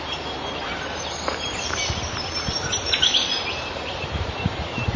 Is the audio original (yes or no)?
no